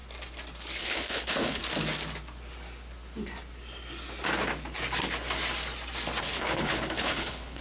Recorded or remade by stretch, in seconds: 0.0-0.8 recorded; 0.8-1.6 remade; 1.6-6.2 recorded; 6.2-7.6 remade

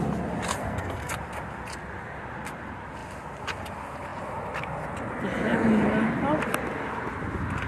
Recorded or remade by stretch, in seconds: 0.0-0.6 recorded; 0.6-1.1 remade; 1.1-7.7 recorded

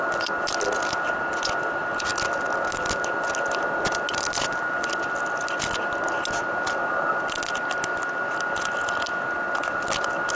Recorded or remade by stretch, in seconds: 0.0-10.3 recorded

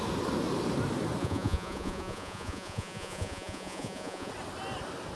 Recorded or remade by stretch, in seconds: 0.0-1.2 recorded; 1.2-4.3 remade; 4.3-5.2 recorded

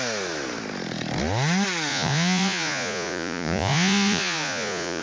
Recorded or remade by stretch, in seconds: 0.0-1.9 recorded; 1.9-5.0 remade

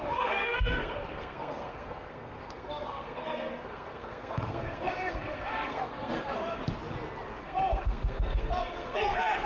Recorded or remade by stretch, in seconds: 0.0-6.6 remade; 6.6-7.4 recorded; 7.4-9.5 remade

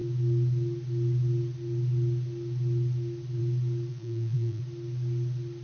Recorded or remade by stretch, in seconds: 0.0-3.9 recorded; 3.9-4.6 remade; 4.6-5.6 recorded